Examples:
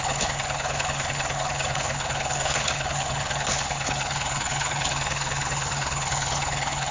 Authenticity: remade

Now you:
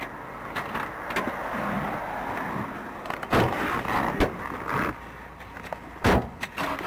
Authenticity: recorded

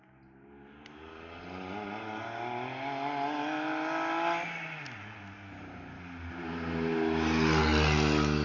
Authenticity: recorded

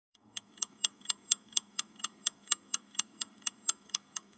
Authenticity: remade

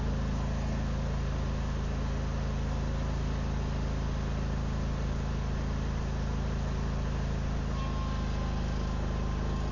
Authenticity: recorded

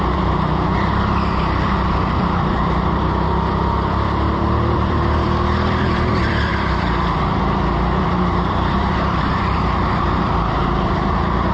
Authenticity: remade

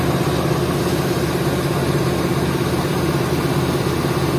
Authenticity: recorded